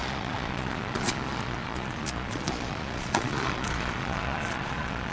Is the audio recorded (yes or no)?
no